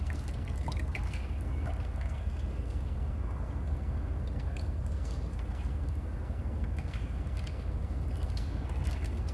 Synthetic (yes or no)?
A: yes